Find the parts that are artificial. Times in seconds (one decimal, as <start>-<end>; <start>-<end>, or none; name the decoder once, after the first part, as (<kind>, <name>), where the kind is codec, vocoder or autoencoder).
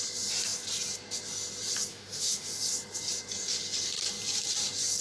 1.9-2.5 (autoencoder, DAC-VAE)